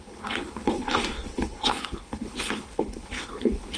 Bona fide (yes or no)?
no